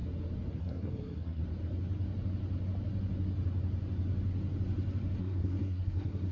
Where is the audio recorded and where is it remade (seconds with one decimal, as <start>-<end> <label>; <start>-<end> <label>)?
0.0-0.6 recorded; 0.6-1.4 remade; 1.4-5.2 recorded; 5.2-6.3 remade